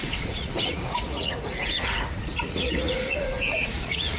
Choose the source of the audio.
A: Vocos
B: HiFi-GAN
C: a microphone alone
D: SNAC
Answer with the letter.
A